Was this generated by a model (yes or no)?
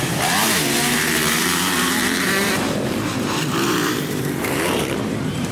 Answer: yes